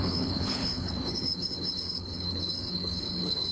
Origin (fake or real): fake